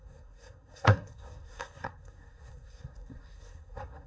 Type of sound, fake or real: fake